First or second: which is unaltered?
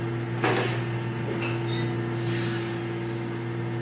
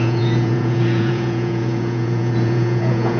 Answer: first